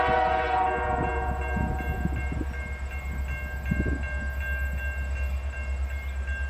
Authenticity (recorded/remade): recorded